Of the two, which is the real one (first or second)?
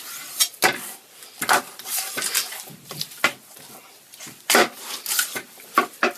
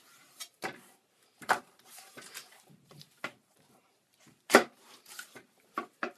first